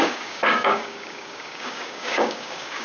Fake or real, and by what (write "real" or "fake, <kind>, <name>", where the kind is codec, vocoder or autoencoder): fake, codec, DAC